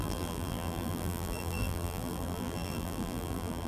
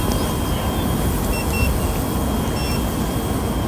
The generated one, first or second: first